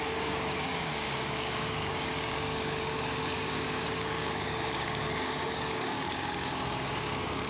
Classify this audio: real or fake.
fake